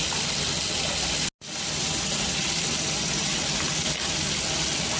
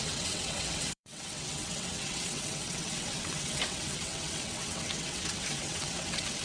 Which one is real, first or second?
first